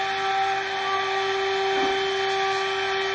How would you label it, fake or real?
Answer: real